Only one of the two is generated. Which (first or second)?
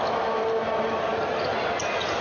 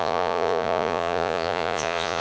second